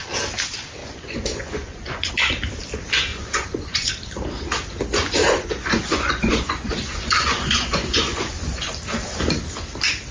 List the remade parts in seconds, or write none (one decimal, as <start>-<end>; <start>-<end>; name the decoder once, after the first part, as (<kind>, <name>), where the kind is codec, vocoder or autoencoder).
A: 0.8-2.1 (vocoder, Vocos); 3.1-3.9; 5.2-8.7